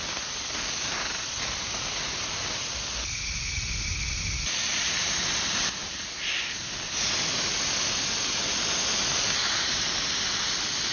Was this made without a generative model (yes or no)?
yes